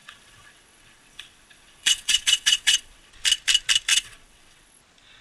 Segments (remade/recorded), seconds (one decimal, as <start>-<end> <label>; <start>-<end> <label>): 0.0-3.1 remade; 3.1-3.9 recorded; 3.9-4.8 remade; 4.8-5.2 recorded